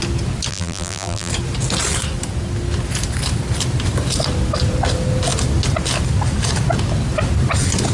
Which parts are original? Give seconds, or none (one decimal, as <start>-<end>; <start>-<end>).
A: 0.0-0.5; 1.3-7.9

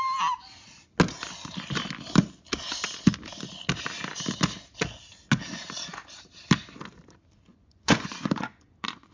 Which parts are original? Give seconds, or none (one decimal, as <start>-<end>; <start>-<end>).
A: 0.0-7.5